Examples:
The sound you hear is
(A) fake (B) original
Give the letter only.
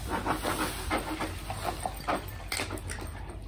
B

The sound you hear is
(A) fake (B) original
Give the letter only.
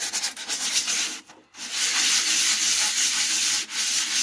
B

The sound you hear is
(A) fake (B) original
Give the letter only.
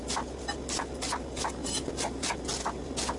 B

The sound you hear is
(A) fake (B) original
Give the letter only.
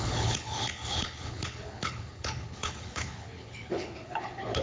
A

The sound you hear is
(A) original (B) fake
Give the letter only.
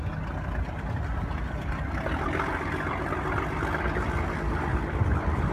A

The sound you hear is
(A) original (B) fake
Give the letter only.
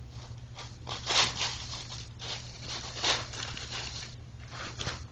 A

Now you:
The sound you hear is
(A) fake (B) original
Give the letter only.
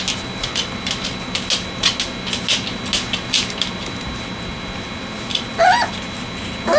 B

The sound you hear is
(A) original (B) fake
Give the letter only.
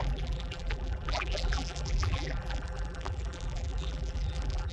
B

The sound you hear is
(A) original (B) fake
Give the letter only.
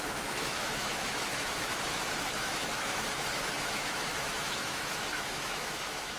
B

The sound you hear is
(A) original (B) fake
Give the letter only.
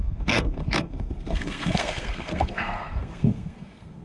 B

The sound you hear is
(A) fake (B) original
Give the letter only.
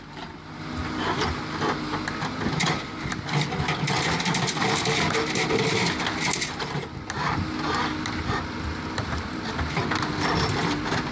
B